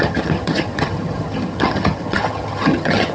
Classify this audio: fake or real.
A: fake